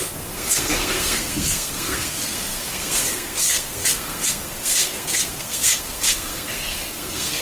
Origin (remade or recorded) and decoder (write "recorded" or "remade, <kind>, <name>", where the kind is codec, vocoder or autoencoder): remade, codec, SNAC